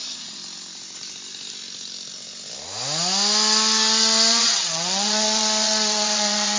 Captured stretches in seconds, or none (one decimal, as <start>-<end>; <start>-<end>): 0.4-4.4